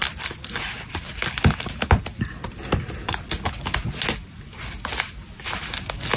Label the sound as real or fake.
real